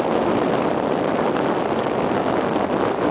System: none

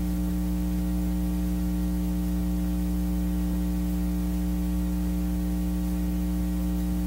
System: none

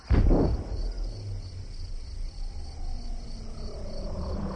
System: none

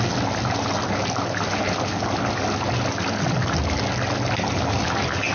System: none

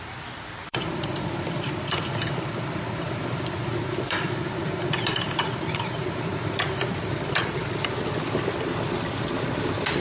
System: vocoder, BigVGAN v2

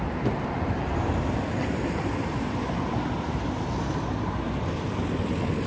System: none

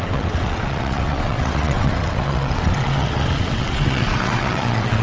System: vocoder, WaveNeXt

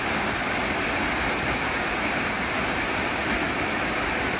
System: none